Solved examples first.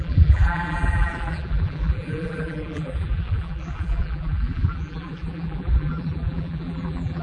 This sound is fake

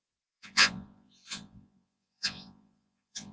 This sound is fake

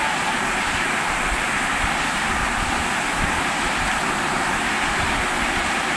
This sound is fake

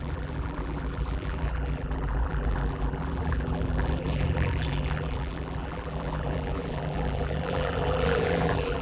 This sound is fake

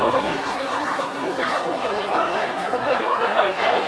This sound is fake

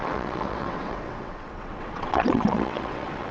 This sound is fake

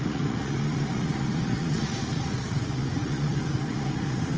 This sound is fake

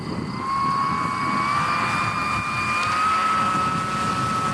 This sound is real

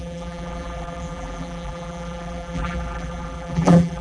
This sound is fake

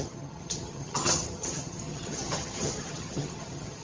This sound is fake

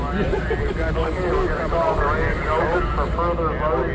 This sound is real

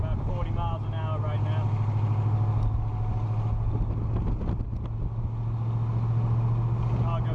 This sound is real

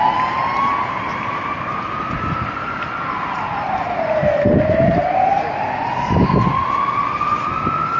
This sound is real